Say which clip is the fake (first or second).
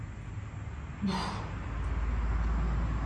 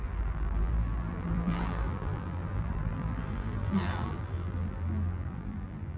second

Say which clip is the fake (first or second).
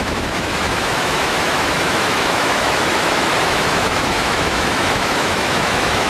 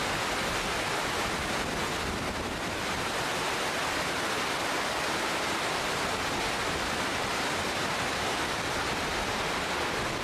first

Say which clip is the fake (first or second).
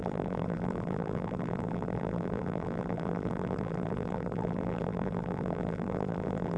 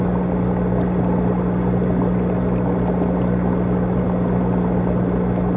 first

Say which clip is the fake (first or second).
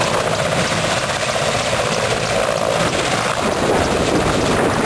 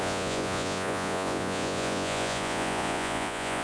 second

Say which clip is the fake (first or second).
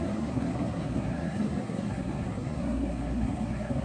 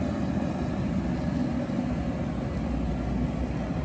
first